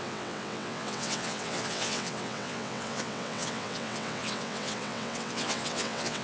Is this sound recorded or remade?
remade